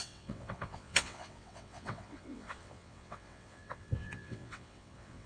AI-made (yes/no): yes